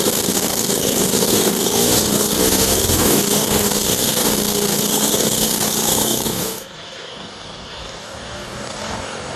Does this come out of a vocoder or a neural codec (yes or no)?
yes